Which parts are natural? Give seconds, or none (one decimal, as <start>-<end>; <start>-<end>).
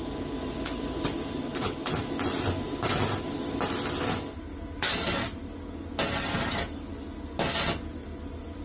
0.0-8.6